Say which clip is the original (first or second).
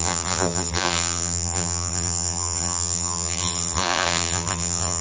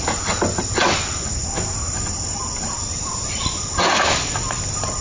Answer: second